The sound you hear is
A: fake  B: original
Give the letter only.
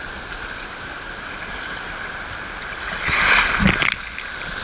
B